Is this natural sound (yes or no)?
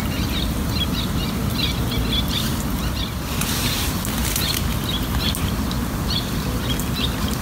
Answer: yes